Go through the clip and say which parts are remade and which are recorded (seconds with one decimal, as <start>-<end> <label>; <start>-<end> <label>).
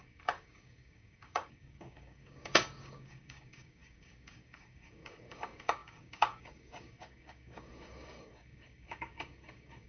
0.0-9.9 remade